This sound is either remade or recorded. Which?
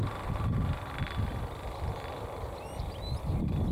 recorded